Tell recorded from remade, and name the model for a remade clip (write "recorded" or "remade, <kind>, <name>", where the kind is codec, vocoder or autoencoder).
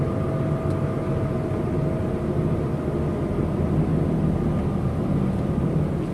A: recorded